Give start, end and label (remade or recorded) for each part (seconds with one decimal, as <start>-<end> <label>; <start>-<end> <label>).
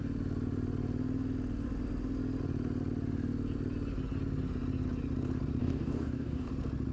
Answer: 0.0-5.6 recorded; 5.6-6.5 remade; 6.5-6.9 recorded